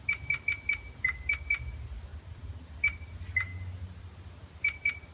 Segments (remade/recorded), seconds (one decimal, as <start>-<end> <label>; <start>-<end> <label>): 0.0-2.1 recorded; 2.1-3.1 remade; 3.1-5.1 recorded